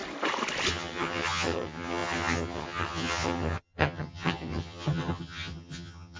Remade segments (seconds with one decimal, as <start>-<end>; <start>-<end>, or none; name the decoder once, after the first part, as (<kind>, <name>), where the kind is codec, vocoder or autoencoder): 0.7-6.2 (vocoder, HiFi-GAN)